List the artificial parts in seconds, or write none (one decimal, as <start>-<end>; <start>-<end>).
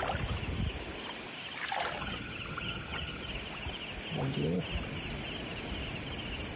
2.0-3.3